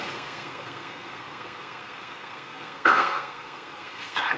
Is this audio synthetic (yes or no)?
yes